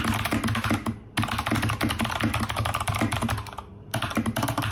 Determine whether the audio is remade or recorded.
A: recorded